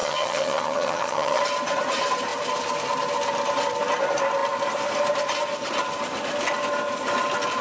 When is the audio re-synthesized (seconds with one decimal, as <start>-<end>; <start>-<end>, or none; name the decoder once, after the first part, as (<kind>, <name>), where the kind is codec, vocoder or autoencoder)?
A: 0.0-1.4 (vocoder, HiFi-GAN)